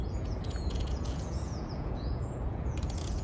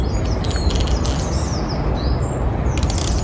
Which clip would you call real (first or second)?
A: second